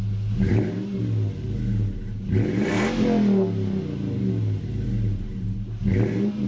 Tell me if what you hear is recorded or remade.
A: recorded